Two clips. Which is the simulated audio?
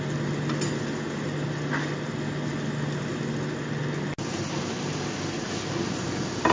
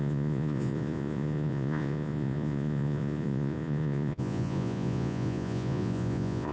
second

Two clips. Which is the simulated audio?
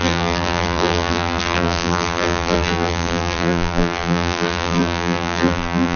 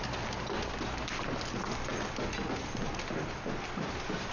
first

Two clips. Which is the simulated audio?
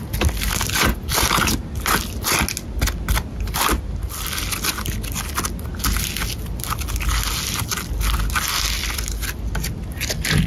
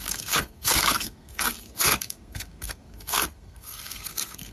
second